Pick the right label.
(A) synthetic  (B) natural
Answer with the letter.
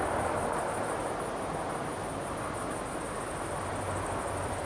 B